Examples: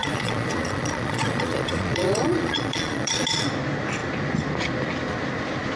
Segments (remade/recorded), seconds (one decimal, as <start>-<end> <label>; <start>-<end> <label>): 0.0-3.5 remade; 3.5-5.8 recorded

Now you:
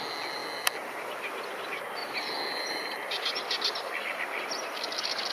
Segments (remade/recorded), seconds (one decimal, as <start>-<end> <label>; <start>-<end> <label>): 0.0-2.0 recorded; 2.0-5.3 remade

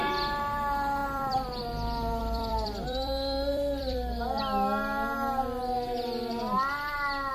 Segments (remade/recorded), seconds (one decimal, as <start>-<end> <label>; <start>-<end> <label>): 0.0-1.0 recorded; 1.0-1.6 remade; 1.6-2.2 recorded; 2.2-4.4 remade; 4.4-7.3 recorded